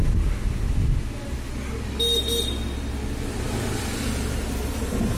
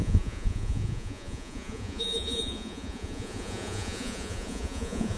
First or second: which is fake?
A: second